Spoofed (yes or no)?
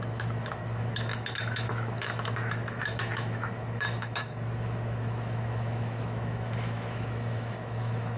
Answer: yes